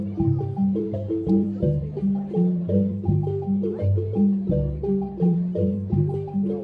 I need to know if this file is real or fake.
fake